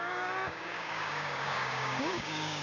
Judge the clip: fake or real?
fake